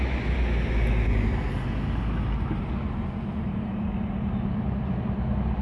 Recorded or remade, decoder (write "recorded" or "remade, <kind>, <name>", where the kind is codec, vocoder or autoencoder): recorded